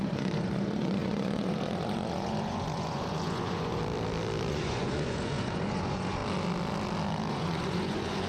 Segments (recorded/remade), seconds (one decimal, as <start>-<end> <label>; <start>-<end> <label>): 0.0-3.8 remade; 3.8-4.5 recorded; 4.5-6.2 remade; 6.2-7.3 recorded; 7.3-8.3 remade